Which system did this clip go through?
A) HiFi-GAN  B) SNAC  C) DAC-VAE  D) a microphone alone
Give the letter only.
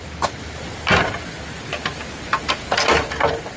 D